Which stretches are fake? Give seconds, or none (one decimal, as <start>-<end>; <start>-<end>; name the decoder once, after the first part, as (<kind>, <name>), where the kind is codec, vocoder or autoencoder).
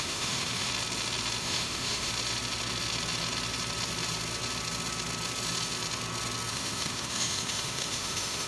0.0-0.7 (autoencoder, DAC-VAE); 1.4-2.1; 6.5-8.5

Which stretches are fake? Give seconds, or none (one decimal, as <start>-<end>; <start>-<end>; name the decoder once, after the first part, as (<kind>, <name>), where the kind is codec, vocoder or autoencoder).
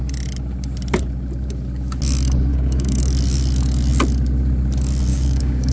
2.5-3.0 (codec, DAC); 5.1-5.7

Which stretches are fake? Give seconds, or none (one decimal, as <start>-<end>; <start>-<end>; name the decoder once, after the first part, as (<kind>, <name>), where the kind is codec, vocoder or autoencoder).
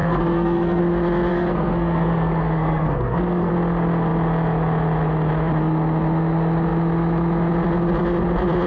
0.0-0.8 (codec, SNAC); 1.3-3.5